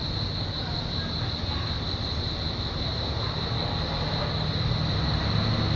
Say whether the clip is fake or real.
real